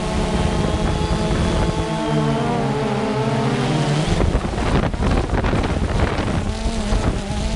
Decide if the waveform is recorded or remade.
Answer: recorded